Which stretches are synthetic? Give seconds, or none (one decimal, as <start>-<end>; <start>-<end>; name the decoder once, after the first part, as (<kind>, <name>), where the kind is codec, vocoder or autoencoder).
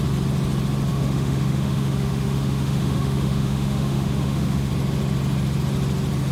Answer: 0.9-4.7 (autoencoder, DAC-VAE)